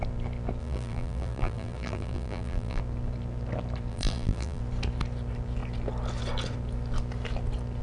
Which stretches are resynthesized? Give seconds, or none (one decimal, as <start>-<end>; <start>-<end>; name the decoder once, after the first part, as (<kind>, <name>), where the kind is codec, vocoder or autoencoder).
0.6-2.8 (vocoder, BigVGAN v2); 3.9-4.6